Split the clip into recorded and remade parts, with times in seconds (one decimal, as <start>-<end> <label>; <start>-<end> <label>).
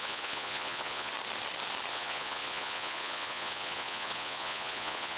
0.0-1.1 remade; 1.1-1.9 recorded; 1.9-5.2 remade